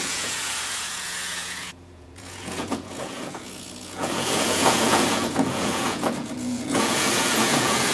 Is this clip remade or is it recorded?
remade